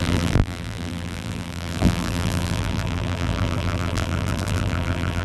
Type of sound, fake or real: fake